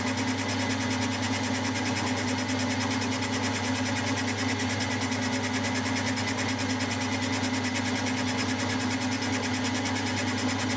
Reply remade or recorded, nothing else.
recorded